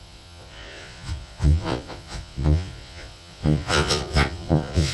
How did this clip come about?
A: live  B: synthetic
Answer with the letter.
B